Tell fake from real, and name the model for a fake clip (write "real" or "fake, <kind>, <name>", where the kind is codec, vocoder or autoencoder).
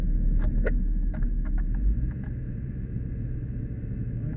fake, autoencoder, DAC-VAE